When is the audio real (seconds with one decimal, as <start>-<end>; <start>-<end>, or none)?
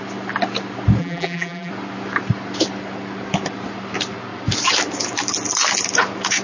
0.0-1.0; 1.7-6.4